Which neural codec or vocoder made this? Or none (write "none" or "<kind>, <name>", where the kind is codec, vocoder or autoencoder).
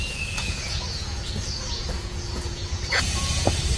vocoder, Vocos